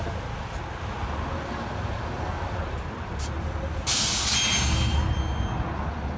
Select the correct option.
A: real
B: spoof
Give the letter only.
A